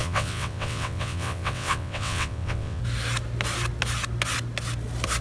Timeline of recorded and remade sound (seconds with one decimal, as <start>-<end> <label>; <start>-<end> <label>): 0.0-2.8 remade; 2.8-5.2 recorded